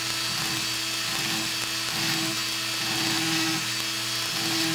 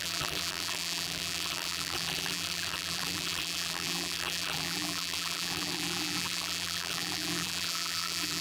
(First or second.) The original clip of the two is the first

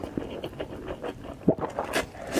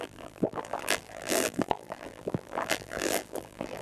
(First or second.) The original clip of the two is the first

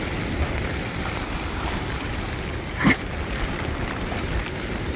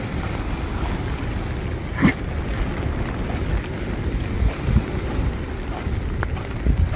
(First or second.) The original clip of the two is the second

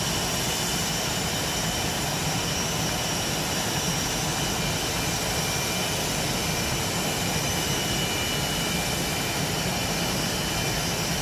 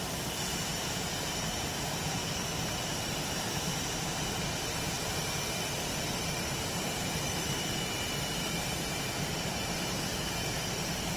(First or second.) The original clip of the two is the first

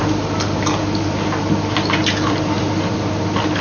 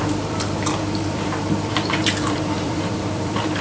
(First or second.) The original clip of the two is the first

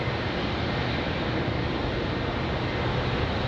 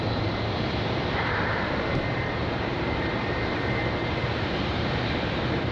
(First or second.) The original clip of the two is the first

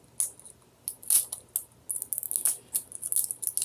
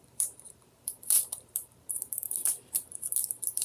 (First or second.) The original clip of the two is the first